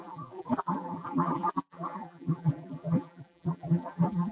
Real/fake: fake